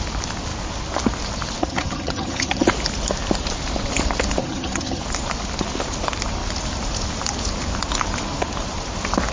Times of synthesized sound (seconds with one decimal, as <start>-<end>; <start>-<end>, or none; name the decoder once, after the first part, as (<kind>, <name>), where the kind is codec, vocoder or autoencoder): 1.6-2.7 (vocoder, HiFi-GAN); 4.4-5.0